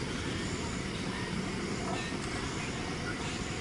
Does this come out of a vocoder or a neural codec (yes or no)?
no